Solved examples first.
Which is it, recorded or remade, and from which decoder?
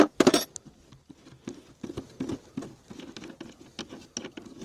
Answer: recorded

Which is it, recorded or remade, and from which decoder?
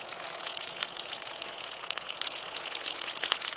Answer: remade, vocoder, Vocos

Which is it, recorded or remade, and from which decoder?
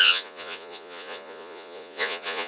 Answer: remade, vocoder, Vocos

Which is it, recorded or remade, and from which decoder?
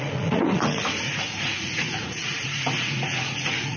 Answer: remade, vocoder, Vocos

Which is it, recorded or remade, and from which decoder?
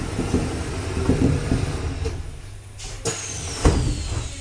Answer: recorded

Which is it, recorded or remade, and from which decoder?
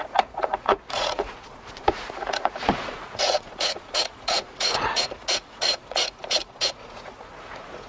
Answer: remade, vocoder, Vocos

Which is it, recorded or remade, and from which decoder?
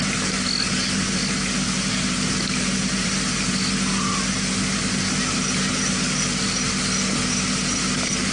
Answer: recorded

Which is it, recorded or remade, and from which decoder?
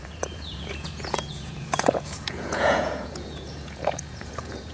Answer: remade, vocoder, Vocos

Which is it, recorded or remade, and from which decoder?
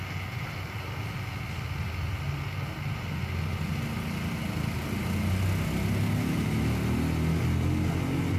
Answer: recorded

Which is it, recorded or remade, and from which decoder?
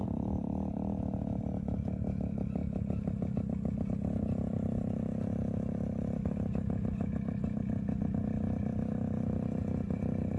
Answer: recorded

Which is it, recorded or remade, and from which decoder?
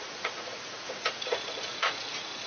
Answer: remade, vocoder, Vocos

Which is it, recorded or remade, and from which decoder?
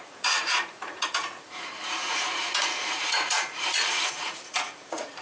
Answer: remade, vocoder, Vocos